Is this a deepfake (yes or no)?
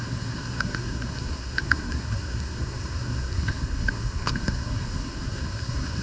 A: yes